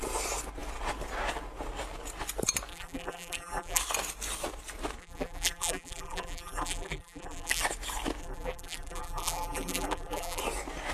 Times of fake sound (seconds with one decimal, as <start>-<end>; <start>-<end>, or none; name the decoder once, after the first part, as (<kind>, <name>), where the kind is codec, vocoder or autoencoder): 2.7-3.8 (vocoder, BigVGAN v2); 5.0-7.6; 8.2-10.4